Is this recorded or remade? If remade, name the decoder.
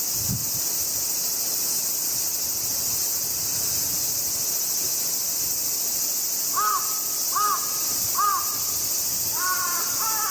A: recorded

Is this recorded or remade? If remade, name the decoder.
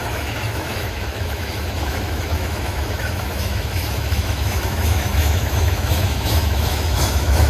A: remade, autoencoder, DAC-VAE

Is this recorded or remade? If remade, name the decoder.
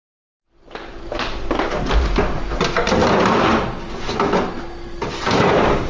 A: recorded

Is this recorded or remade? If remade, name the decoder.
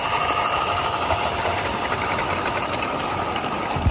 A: recorded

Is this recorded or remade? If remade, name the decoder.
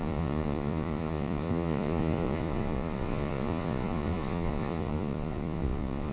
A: remade, vocoder, Vocos